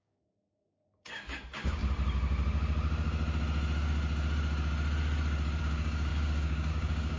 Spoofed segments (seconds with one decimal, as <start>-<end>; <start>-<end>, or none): 0.0-1.8; 5.6-7.2